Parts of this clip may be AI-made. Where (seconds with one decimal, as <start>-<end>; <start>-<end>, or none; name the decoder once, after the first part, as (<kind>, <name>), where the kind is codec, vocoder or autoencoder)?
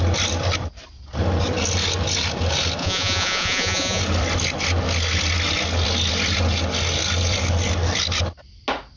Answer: 2.8-4.0 (vocoder, Vocos)